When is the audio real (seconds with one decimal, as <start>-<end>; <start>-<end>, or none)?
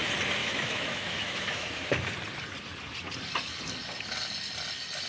0.0-0.4; 1.9-5.1